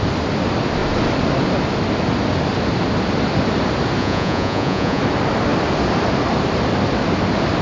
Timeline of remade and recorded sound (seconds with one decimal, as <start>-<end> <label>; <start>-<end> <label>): 0.0-4.0 recorded; 4.0-5.0 remade; 5.0-7.6 recorded